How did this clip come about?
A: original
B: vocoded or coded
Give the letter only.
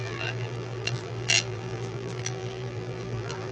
B